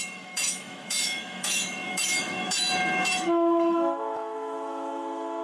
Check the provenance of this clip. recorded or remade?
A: remade